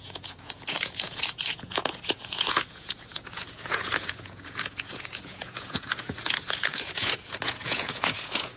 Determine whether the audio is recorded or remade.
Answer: remade